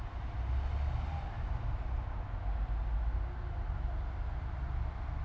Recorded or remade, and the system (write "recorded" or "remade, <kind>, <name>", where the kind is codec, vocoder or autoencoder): recorded